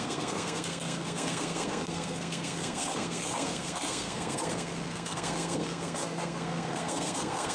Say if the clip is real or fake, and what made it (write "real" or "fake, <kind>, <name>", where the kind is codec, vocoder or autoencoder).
fake, codec, SNAC